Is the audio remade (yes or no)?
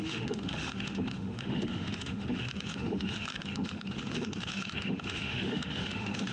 yes